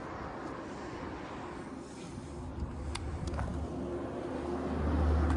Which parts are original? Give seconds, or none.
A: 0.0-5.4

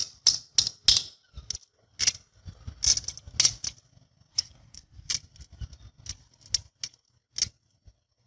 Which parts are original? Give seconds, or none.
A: 0.0-4.3; 5.1-8.3

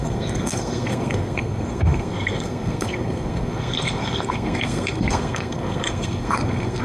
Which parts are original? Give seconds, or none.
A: none

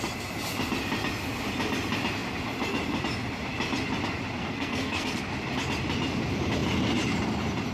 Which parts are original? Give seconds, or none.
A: 0.0-4.4; 5.2-7.7

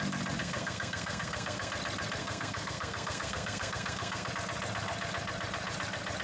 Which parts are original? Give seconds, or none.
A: 0.0-0.4; 1.7-2.2; 4.3-6.2